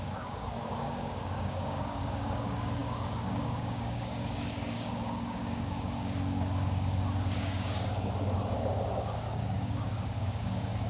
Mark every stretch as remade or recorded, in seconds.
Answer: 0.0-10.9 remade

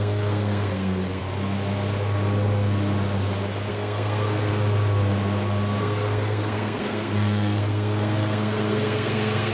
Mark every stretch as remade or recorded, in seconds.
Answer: 0.0-1.2 remade; 1.2-3.7 recorded; 3.7-4.5 remade; 4.5-5.8 recorded; 5.8-9.5 remade

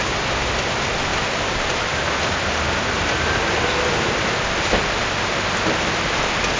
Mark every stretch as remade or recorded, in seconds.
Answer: 0.0-6.6 recorded

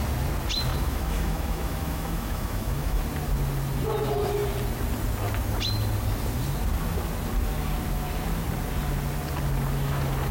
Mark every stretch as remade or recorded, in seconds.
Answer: 0.0-0.7 recorded; 0.7-3.0 remade; 3.0-10.3 recorded

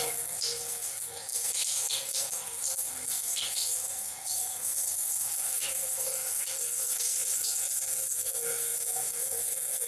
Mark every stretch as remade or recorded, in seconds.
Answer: 0.0-9.9 remade

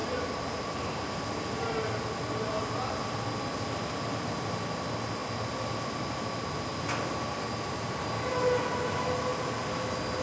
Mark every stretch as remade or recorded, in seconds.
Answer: 0.0-1.1 remade; 1.1-10.2 recorded

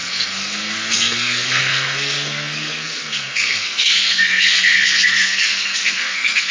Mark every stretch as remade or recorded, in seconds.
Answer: 0.0-6.5 remade

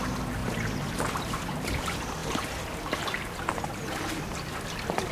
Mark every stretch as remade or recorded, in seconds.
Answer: 0.0-5.1 recorded